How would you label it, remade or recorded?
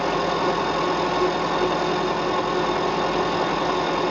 recorded